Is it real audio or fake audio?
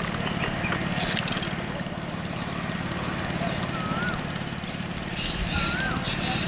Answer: real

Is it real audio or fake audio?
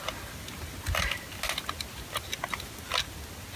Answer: real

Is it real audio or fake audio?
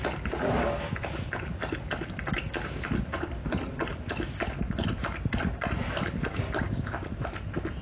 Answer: real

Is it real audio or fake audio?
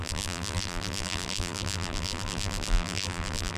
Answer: fake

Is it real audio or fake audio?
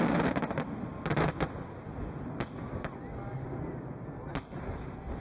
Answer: real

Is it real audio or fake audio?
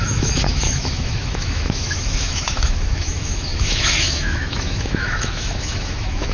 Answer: fake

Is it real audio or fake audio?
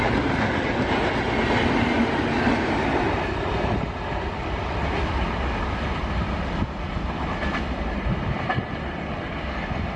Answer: real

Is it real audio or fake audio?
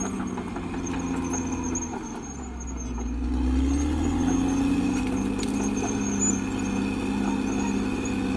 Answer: real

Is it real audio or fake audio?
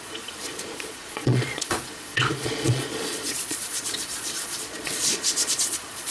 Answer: fake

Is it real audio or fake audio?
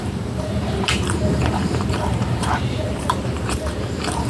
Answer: fake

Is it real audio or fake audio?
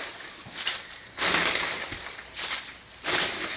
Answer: real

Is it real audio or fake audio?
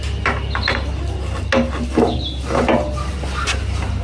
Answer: real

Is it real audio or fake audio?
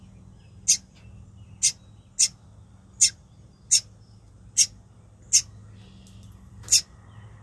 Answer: real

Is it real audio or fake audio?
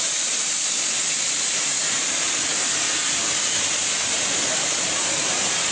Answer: fake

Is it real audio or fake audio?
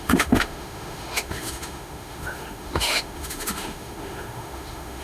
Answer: fake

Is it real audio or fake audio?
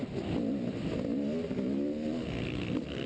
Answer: real